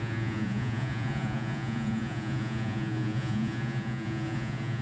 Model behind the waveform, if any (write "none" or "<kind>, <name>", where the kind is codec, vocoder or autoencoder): vocoder, Vocos